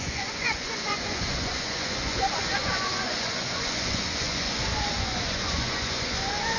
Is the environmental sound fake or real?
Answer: fake